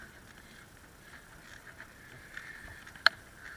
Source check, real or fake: real